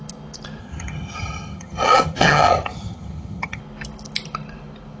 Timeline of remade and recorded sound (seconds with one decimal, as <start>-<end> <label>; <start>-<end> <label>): 0.0-0.6 recorded; 0.6-3.6 remade; 3.6-5.0 recorded